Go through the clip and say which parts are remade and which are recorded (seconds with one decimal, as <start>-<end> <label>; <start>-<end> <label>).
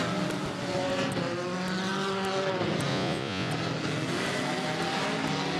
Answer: 0.0-2.9 recorded; 2.9-3.5 remade; 3.5-5.6 recorded